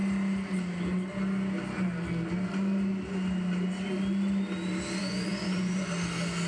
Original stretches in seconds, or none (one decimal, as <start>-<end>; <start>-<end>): 0.0-5.0; 5.9-6.5